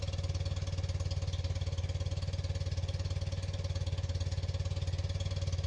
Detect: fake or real real